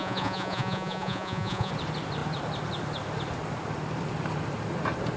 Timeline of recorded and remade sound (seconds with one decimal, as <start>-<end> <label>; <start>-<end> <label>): 0.0-1.7 remade; 1.7-5.2 recorded